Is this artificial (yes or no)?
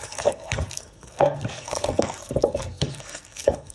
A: yes